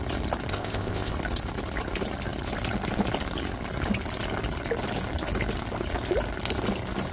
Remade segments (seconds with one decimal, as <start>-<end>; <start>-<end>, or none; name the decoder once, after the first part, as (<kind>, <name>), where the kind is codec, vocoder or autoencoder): 0.5-1.1 (codec, ZipCodec)